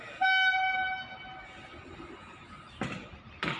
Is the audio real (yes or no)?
yes